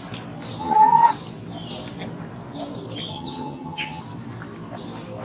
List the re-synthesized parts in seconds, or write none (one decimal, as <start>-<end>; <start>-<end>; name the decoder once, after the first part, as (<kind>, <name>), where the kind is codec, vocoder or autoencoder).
0.6-1.1 (vocoder, HiFi-GAN); 3.1-4.0